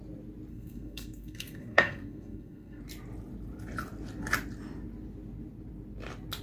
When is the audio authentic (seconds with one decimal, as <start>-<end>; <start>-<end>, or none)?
0.0-0.5; 2.8-6.4